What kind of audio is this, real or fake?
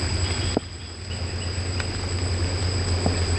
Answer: real